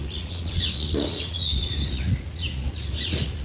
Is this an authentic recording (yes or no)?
no